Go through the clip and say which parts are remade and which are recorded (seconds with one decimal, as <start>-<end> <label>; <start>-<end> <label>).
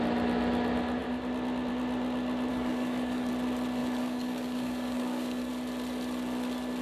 0.0-2.5 recorded; 2.5-3.3 remade; 3.3-3.8 recorded; 3.8-5.5 remade; 5.5-6.8 recorded